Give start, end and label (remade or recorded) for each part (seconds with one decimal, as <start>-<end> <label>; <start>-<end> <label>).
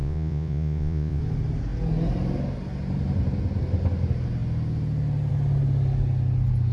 0.0-1.2 remade; 1.2-6.7 recorded